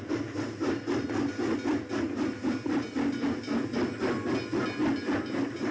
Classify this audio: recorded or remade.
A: recorded